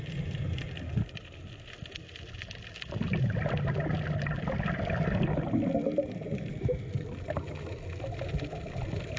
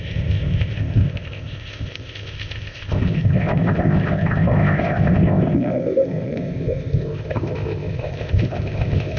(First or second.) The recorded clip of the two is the first